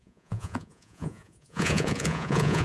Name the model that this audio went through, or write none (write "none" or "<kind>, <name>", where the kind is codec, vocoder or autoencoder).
vocoder, Vocos